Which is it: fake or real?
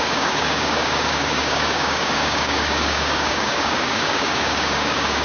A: fake